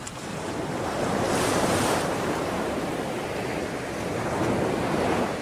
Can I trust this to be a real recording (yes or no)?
no